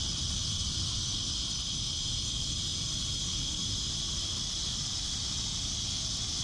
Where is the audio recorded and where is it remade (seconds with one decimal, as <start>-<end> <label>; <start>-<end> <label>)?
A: 0.0-2.7 remade; 2.7-4.3 recorded; 4.3-6.4 remade

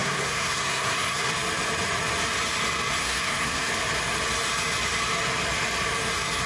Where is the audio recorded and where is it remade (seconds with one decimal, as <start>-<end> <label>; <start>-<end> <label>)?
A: 0.0-1.3 remade; 1.3-3.0 recorded; 3.0-3.7 remade; 3.7-6.5 recorded

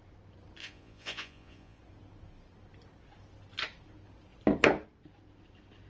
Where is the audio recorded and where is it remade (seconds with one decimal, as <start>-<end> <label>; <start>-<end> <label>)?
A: 0.0-0.6 recorded; 0.6-1.8 remade; 1.8-5.9 recorded

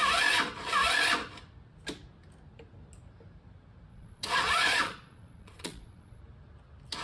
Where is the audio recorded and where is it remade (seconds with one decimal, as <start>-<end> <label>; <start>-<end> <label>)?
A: 0.0-3.9 recorded; 3.9-6.2 remade; 6.2-7.0 recorded

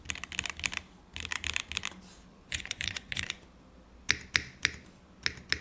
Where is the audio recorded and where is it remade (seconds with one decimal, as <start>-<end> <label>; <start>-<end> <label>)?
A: 0.0-2.3 recorded; 2.3-3.4 remade; 3.4-5.6 recorded

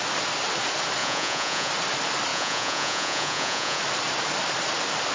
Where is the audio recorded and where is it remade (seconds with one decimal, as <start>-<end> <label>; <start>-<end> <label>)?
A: 0.0-1.0 recorded; 1.0-1.7 remade; 1.7-2.3 recorded; 2.3-3.8 remade; 3.8-5.1 recorded

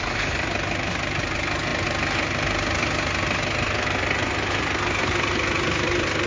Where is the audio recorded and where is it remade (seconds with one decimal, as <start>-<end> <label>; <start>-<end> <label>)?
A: 0.0-6.3 recorded

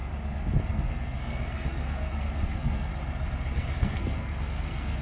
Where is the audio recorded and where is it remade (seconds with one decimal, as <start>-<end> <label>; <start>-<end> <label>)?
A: 0.0-0.6 recorded; 0.6-2.9 remade; 2.9-3.5 recorded; 3.5-5.0 remade